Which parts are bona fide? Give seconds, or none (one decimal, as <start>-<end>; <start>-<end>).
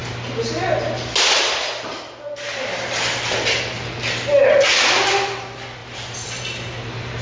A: 0.0-7.2